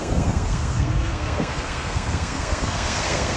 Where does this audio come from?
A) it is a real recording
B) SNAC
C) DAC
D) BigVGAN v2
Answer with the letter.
B